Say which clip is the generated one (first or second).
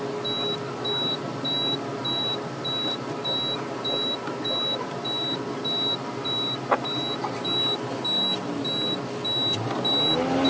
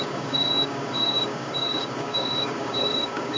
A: second